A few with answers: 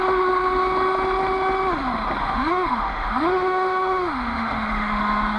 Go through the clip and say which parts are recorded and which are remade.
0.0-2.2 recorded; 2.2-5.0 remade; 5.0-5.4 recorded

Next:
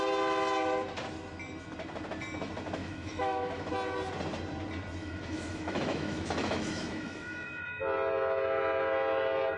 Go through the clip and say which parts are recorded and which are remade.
0.0-2.8 recorded; 2.8-3.7 remade; 3.7-5.0 recorded; 5.0-7.8 remade; 7.8-9.6 recorded